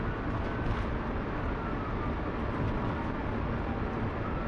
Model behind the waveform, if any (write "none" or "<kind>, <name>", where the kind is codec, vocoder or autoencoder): none